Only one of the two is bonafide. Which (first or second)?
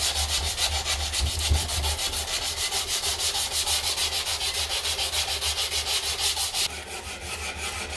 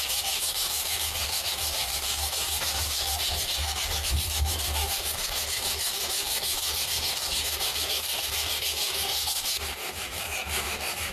first